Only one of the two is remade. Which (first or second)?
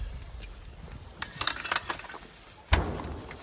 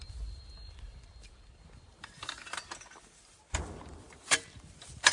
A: second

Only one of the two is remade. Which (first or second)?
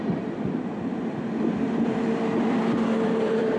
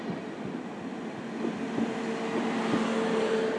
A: first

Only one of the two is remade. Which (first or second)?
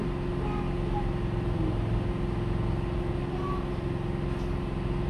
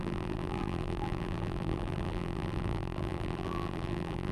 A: second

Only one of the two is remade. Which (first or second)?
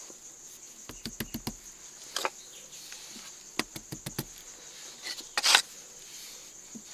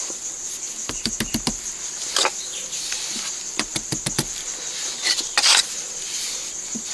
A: second